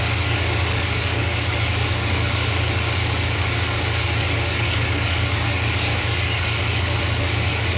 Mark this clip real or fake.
fake